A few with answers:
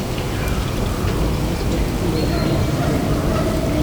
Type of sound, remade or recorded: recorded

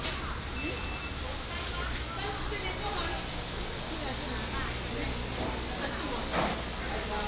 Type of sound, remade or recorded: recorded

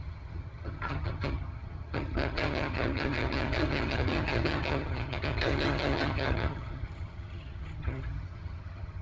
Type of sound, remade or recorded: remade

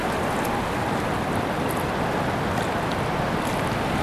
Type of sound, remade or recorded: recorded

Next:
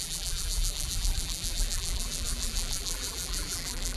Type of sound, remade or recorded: remade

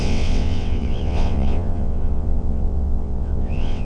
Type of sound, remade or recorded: remade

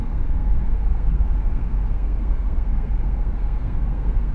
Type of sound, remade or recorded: remade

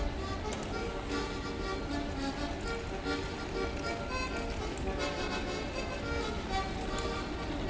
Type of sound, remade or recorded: recorded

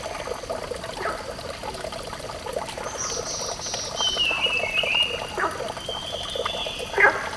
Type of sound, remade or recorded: recorded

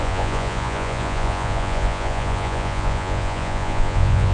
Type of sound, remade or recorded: remade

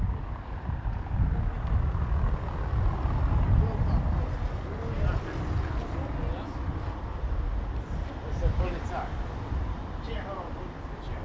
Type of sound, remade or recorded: recorded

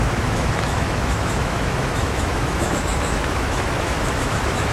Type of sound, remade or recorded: remade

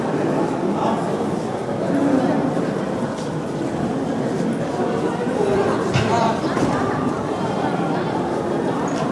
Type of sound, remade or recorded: recorded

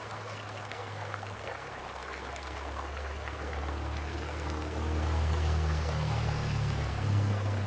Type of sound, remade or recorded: remade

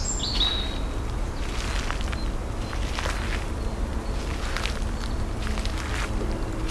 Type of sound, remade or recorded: recorded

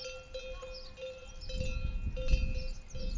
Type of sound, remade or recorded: recorded